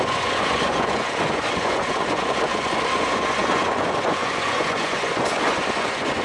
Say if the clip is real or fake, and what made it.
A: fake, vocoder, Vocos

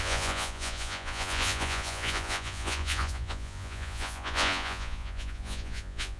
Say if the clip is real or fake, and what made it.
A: fake, vocoder, Vocos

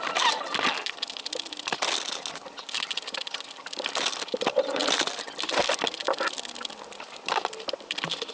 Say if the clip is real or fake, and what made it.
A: real